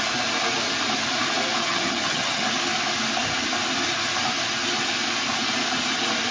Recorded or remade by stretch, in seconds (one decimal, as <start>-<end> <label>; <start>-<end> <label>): 0.0-1.6 recorded; 1.6-2.4 remade; 2.4-6.3 recorded